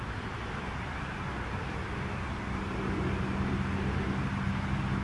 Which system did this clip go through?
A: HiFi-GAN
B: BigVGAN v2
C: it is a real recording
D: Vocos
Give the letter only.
C